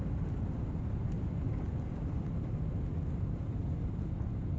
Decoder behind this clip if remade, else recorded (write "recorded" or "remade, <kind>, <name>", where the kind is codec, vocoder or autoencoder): recorded